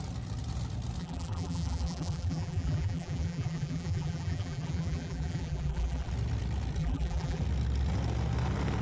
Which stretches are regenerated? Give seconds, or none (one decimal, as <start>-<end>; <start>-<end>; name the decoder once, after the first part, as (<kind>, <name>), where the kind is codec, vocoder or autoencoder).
1.0-6.1 (vocoder, BigVGAN v2); 6.8-7.4